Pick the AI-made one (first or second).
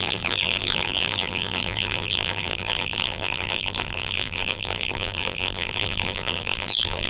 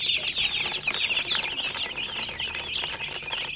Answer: first